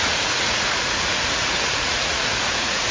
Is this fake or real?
fake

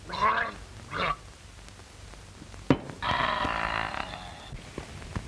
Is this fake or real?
real